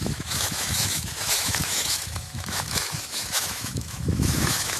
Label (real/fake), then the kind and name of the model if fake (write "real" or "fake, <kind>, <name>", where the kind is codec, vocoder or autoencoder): fake, autoencoder, DAC-VAE